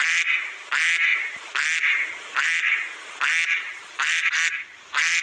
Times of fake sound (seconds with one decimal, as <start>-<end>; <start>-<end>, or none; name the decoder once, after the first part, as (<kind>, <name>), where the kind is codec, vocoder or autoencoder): none